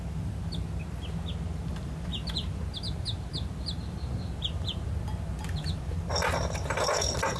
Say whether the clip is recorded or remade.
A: recorded